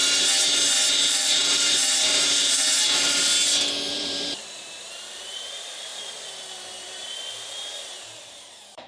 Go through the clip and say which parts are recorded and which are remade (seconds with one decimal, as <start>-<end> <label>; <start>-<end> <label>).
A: 0.0-0.9 recorded; 0.9-3.3 remade; 3.3-3.9 recorded; 3.9-8.9 remade